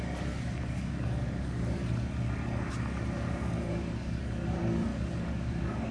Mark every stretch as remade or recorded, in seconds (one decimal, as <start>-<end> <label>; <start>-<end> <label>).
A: 0.0-1.8 remade; 1.8-2.7 recorded; 2.7-5.9 remade